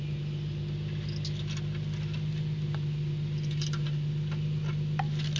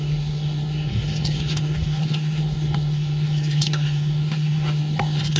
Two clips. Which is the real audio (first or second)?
first